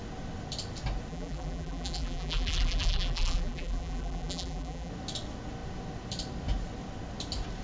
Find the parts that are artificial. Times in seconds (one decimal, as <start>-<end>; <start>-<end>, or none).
1.1-4.9